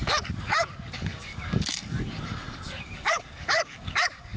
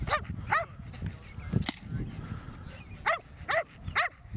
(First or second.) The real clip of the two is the second